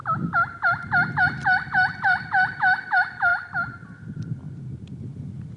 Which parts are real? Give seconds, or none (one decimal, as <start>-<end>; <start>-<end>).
none